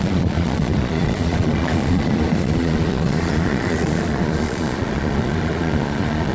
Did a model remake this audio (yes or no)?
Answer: yes